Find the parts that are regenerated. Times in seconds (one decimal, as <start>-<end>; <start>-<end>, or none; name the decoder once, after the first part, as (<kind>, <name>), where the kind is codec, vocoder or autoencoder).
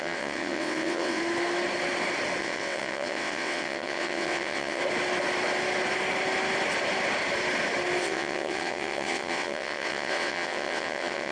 0.0-1.2 (vocoder, WaveNeXt); 2.4-4.8; 8.0-11.3